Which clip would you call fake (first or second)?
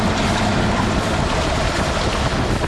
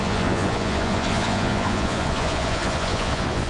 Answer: second